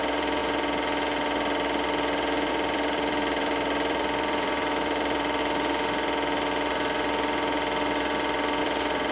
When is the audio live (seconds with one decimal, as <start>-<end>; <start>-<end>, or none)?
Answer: 0.4-2.5; 5.4-8.6